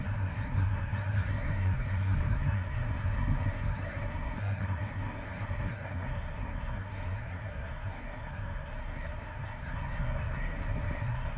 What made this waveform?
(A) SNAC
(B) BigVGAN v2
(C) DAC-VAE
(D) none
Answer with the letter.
A